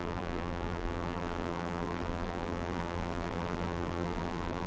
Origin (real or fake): fake